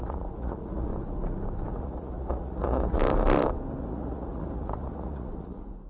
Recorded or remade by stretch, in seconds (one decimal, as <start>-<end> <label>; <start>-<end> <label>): 0.0-0.9 remade; 0.9-1.7 recorded; 1.7-3.0 remade; 3.0-3.8 recorded; 3.8-5.9 remade